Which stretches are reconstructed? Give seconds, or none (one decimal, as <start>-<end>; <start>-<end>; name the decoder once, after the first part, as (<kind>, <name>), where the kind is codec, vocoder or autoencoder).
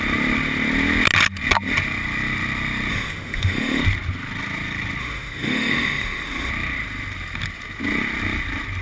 2.9-3.8 (autoencoder, DAC-VAE); 5.0-6.5